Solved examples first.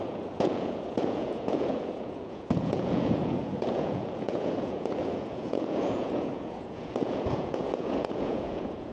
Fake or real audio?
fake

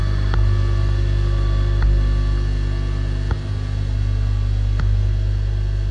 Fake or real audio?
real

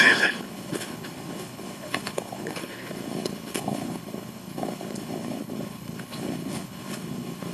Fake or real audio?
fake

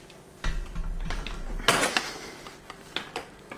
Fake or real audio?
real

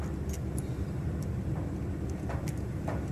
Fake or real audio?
fake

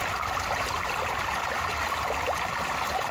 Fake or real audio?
real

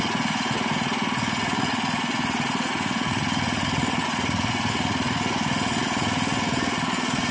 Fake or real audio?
fake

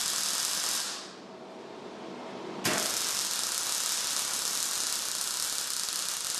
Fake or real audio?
real